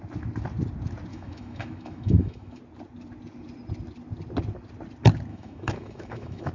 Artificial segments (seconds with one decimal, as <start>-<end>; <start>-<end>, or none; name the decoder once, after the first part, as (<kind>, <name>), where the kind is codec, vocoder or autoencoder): 1.1-2.6 (autoencoder, DAC-VAE); 5.3-6.5